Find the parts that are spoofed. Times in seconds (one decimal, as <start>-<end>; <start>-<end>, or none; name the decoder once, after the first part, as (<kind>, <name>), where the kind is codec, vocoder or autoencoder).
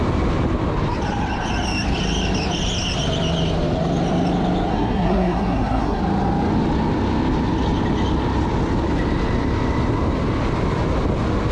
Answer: 4.7-6.0 (codec, SNAC)